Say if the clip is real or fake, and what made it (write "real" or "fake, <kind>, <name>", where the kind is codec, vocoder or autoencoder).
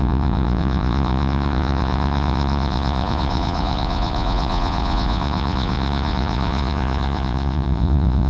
fake, vocoder, Vocos